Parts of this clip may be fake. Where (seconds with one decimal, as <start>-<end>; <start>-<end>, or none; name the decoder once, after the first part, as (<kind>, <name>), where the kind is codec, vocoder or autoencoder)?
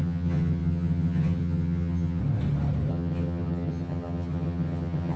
0.0-2.2 (vocoder, HiFi-GAN); 2.9-5.2